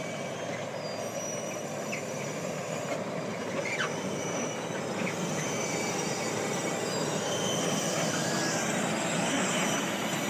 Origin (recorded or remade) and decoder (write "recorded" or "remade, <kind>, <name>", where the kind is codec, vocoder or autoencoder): recorded